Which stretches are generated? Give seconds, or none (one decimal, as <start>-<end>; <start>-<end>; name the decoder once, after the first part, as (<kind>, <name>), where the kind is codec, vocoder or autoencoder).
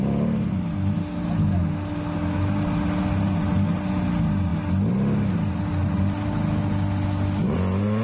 none